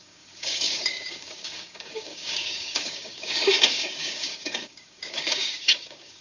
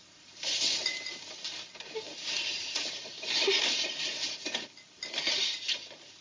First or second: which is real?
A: second